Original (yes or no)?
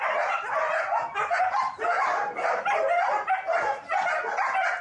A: yes